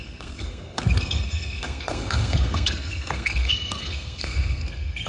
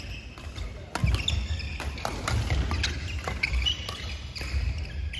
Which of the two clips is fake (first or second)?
first